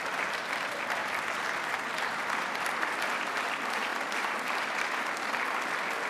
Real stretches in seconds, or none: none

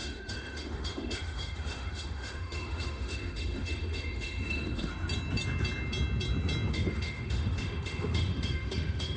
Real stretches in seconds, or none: 4.9-6.7